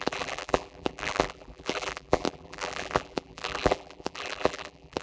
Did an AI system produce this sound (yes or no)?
yes